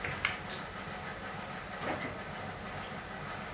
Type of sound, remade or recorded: recorded